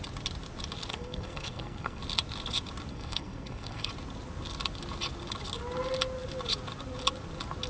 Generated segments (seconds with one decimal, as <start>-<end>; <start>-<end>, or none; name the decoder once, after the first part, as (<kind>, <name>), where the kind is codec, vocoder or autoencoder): 0.9-2.0 (codec, SNAC); 2.9-3.9